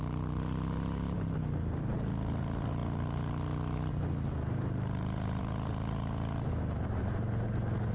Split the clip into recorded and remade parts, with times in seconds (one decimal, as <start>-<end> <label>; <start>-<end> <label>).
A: 0.0-7.9 recorded